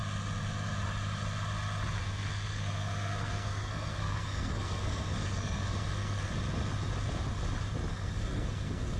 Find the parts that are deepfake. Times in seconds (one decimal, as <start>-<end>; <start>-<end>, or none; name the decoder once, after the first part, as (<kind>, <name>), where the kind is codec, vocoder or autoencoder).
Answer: 2.0-6.3 (codec, SNAC); 7.9-9.0